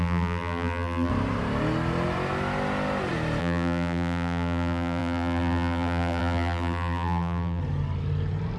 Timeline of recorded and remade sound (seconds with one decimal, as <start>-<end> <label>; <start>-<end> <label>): 0.0-1.1 remade; 1.1-3.4 recorded; 3.4-7.6 remade; 7.6-8.6 recorded